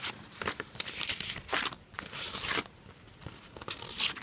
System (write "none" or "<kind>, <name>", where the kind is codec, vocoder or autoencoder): none